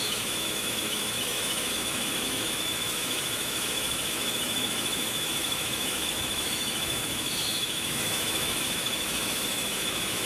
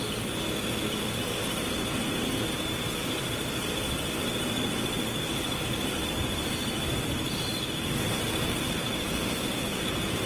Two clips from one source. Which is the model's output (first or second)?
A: first